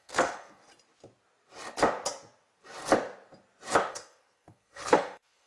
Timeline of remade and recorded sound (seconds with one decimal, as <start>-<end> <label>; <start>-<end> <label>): 0.0-0.6 remade; 0.6-3.9 recorded; 3.9-5.5 remade